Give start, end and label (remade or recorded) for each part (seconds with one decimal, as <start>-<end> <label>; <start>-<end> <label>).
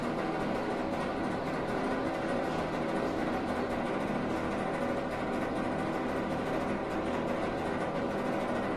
0.0-1.1 recorded; 1.1-4.1 remade; 4.1-8.8 recorded